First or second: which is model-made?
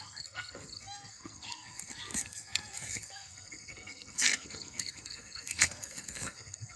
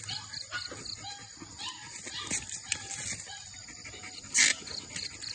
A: first